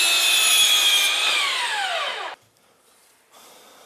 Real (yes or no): yes